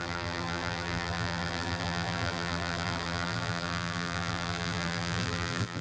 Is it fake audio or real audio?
fake